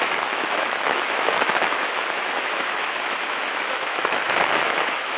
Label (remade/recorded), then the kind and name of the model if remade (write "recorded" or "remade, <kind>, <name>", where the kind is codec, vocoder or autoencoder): remade, autoencoder, DAC-VAE